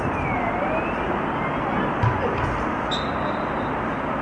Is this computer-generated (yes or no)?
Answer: no